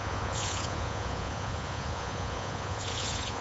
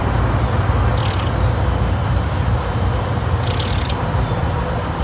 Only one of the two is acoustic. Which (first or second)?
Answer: second